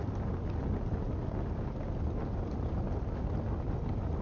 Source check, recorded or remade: recorded